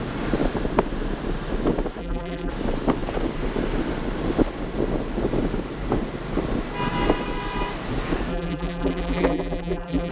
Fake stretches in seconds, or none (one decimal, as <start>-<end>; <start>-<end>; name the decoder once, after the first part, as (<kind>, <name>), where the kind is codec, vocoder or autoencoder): 2.0-2.5 (vocoder, BigVGAN v2); 8.3-10.1